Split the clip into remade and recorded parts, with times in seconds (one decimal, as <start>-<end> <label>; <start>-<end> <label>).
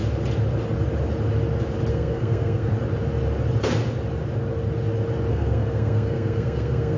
0.0-1.9 recorded; 1.9-2.7 remade; 2.7-5.3 recorded; 5.3-7.0 remade